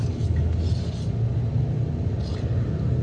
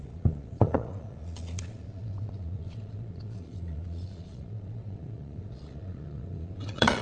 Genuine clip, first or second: first